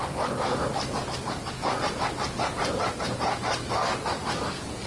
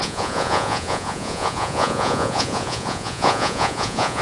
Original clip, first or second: first